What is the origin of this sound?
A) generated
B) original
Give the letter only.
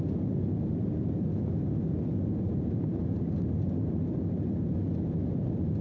B